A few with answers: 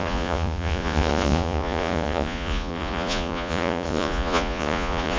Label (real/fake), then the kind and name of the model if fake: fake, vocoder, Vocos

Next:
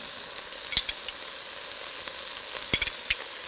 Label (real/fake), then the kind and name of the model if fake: real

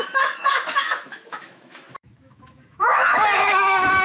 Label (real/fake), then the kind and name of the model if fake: fake, autoencoder, DAC-VAE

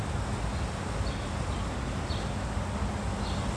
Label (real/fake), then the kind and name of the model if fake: real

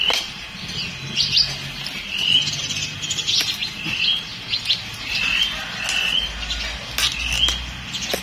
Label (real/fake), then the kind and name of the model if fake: real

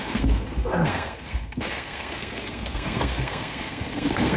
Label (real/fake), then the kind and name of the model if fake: fake, codec, SNAC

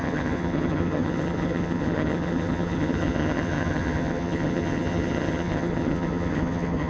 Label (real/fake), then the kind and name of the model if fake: fake, vocoder, HiFi-GAN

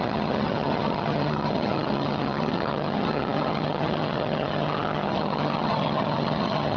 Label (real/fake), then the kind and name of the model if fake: fake, vocoder, HiFi-GAN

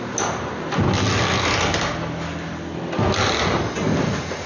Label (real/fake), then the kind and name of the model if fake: real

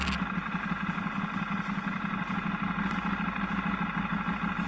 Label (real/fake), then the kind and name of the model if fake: real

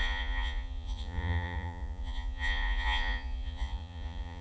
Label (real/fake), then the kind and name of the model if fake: fake, vocoder, Vocos